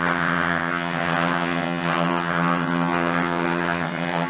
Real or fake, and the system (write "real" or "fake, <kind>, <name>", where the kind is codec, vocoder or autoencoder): fake, vocoder, HiFi-GAN